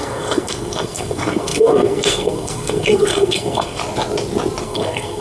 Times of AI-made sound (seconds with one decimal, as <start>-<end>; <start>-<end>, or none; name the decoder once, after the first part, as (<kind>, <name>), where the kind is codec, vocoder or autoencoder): 0.0-3.8 (codec, SNAC); 4.6-5.2

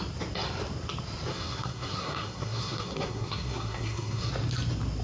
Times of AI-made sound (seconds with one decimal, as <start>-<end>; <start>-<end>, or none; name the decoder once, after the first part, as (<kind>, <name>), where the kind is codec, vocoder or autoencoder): 1.3-4.3 (codec, SNAC)